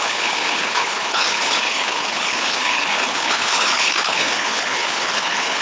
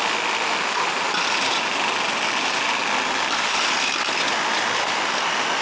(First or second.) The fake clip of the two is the first